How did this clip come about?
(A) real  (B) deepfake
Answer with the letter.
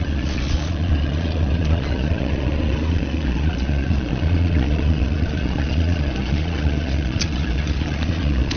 B